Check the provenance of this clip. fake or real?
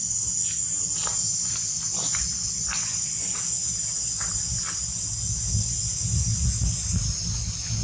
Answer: real